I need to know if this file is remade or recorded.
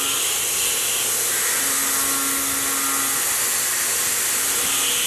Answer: recorded